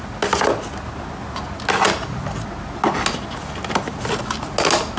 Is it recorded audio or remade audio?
recorded